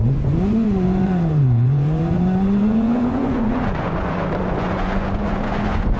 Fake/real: fake